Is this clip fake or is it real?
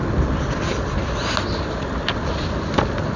real